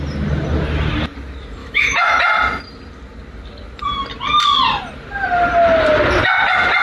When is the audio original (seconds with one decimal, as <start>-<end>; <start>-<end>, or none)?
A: 0.0-1.6; 2.2-6.8